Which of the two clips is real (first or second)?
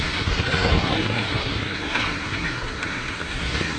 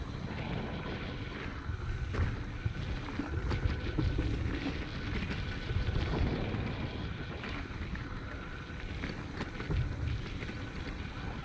second